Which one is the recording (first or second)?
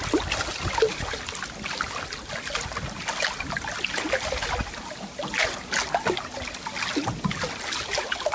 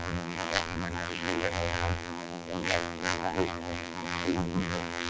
first